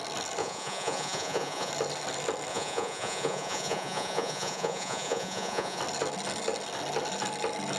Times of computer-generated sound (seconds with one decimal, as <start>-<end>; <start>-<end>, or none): 0.4-1.7; 2.5-5.8